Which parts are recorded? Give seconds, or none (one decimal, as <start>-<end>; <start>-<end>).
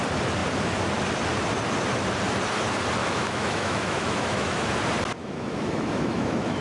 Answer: 0.0-3.0; 4.7-5.2